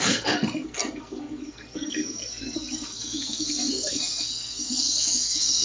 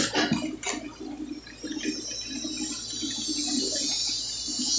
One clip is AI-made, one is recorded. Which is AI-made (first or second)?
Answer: first